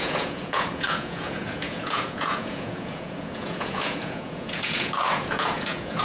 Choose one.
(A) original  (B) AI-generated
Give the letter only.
B